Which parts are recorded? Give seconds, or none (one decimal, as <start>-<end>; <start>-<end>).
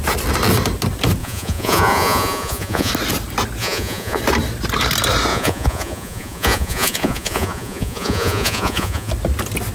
0.0-1.2; 2.9-3.6; 4.2-5.3; 9.1-9.7